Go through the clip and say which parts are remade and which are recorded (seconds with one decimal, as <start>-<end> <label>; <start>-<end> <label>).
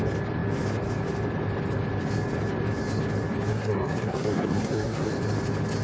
0.0-3.5 recorded; 3.5-5.1 remade; 5.1-5.8 recorded